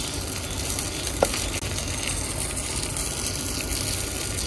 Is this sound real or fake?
real